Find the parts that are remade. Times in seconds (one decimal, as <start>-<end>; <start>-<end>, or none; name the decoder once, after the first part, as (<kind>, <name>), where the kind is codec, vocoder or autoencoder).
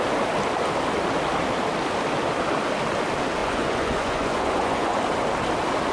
3.4-5.0 (vocoder, Vocos)